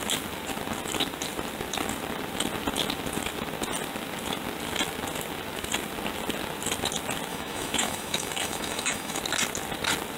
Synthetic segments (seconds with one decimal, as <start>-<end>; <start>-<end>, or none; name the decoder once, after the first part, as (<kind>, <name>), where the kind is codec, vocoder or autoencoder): 7.3-9.2 (autoencoder, DAC-VAE)